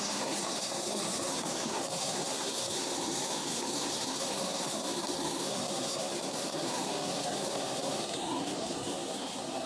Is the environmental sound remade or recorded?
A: remade